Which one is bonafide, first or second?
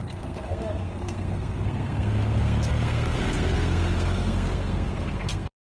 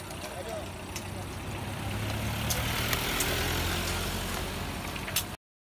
second